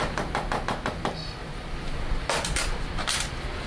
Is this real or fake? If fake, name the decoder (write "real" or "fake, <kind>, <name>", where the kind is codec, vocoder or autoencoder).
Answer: real